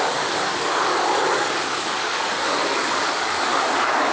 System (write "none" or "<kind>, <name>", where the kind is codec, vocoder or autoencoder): codec, DAC